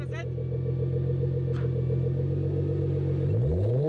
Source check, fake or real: real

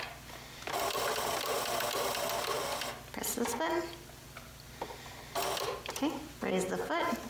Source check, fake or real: real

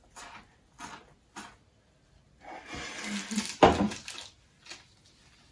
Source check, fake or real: real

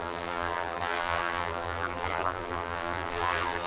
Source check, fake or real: fake